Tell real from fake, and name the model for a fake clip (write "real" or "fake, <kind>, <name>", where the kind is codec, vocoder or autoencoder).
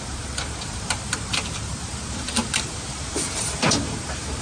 fake, vocoder, BigVGAN v2